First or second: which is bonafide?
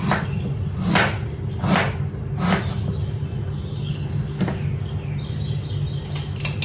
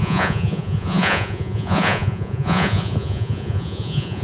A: first